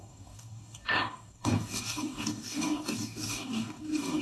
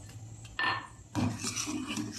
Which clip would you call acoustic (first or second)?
second